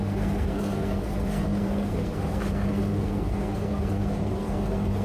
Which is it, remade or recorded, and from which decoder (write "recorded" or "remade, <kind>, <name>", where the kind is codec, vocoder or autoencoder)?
remade, codec, SNAC